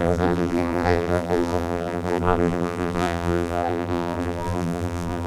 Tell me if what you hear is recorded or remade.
remade